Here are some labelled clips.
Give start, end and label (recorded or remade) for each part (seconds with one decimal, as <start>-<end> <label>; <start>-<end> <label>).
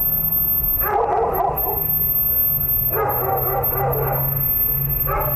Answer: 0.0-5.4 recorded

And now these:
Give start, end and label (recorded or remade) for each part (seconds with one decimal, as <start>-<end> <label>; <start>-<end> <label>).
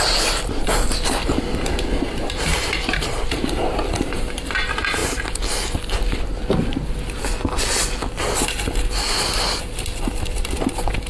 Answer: 0.0-2.5 recorded; 2.5-4.2 remade; 4.2-11.1 recorded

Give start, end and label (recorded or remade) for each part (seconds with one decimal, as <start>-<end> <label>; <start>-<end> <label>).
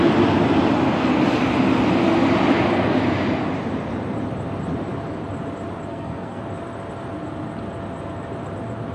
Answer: 0.0-5.9 recorded; 5.9-6.4 remade; 6.4-8.9 recorded